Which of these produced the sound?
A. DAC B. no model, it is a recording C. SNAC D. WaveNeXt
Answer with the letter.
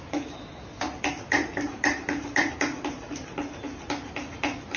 B